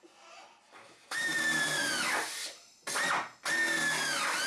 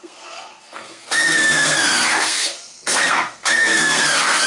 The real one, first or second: first